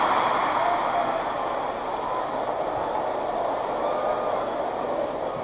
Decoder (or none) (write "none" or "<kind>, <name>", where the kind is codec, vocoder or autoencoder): none